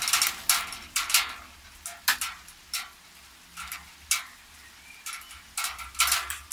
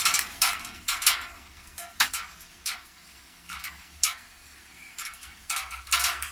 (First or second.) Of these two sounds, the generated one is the second